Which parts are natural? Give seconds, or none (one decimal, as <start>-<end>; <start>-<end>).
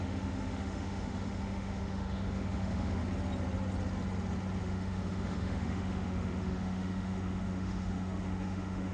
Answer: 3.0-4.6